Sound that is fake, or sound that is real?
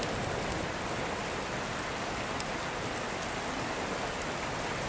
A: real